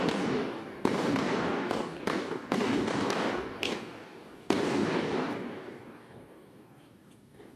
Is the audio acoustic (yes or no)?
no